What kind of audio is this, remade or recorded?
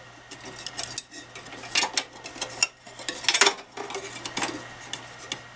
recorded